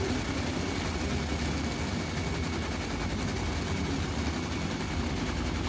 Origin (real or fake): real